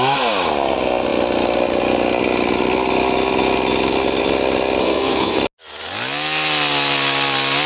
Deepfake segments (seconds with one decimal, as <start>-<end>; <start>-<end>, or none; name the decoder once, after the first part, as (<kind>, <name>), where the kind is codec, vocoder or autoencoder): 4.8-5.4 (codec, SNAC)

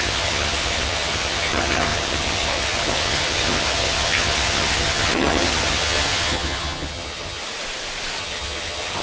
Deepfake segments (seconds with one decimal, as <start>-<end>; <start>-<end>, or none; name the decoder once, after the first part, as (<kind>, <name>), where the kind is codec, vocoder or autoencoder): 0.0-7.4 (vocoder, HiFi-GAN); 8.2-9.0

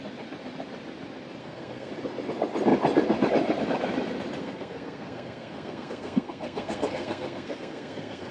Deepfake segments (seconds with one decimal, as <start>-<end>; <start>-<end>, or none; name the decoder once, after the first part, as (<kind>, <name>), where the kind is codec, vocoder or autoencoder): 1.4-1.9 (codec, SNAC); 4.4-8.3

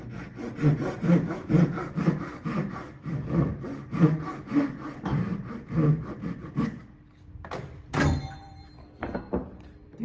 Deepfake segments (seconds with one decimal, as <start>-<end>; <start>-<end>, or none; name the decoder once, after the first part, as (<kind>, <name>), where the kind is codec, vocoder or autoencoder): 8.8-9.3 (codec, SNAC)

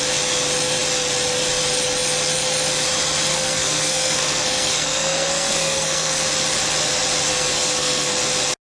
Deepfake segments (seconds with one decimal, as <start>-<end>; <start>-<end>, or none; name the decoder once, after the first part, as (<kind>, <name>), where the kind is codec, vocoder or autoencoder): 3.3-6.2 (codec, SNAC); 7.3-8.1

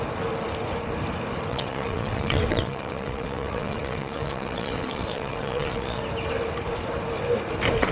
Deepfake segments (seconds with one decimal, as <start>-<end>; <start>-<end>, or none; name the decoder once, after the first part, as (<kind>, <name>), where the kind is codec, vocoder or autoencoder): 1.5-6.0 (vocoder, WaveNeXt)

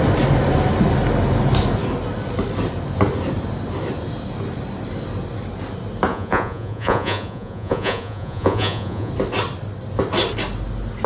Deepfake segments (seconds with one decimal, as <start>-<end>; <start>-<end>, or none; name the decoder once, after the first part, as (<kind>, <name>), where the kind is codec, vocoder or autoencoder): 6.1-9.1 (vocoder, Vocos)

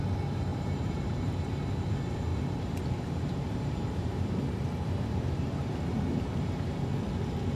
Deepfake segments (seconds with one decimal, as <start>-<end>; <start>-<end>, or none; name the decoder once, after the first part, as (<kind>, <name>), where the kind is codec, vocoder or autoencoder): 0.5-1.9 (vocoder, BigVGAN v2); 2.3-6.9